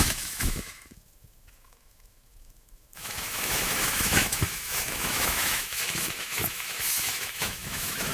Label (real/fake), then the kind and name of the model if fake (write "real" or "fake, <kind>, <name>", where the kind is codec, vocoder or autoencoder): fake, autoencoder, DAC-VAE